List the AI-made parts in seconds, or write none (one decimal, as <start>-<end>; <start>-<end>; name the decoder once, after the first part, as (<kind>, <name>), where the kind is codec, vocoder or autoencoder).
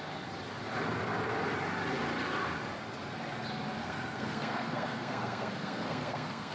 3.8-6.5 (codec, SNAC)